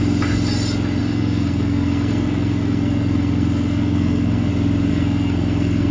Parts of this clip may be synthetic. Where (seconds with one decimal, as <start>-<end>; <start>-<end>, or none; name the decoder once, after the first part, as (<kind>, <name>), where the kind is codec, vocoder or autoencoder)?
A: 1.0-4.5 (codec, SNAC); 4.9-5.9